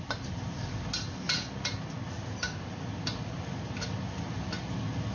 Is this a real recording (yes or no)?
yes